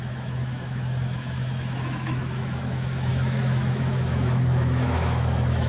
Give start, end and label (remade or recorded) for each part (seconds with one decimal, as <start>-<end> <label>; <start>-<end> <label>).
0.0-5.7 remade

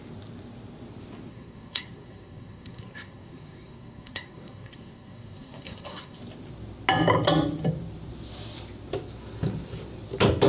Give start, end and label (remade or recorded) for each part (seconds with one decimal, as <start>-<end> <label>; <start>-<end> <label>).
0.0-1.3 recorded; 1.3-6.2 remade; 6.2-10.5 recorded

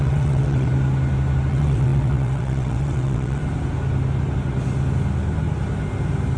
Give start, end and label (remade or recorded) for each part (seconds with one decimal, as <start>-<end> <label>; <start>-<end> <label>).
0.0-0.7 remade; 0.7-1.5 recorded; 1.5-3.4 remade; 3.4-6.4 recorded